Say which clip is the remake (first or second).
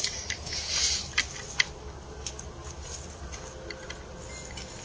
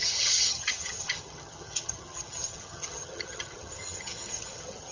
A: second